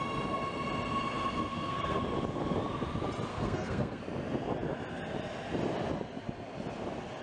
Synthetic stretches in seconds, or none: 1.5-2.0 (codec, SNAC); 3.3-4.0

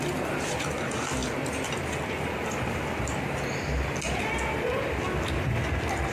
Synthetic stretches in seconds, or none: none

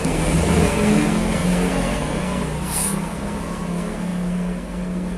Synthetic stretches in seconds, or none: 0.0-5.2 (codec, SNAC)

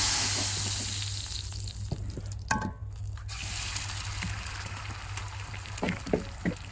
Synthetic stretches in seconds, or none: none